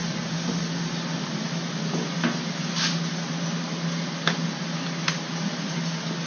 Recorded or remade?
recorded